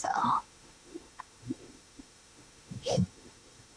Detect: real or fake fake